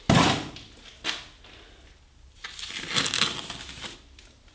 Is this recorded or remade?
recorded